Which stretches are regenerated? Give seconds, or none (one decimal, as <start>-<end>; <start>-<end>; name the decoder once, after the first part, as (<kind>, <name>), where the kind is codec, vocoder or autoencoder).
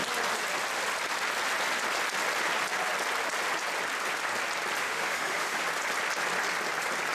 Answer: 4.8-5.6 (autoencoder, DAC-VAE)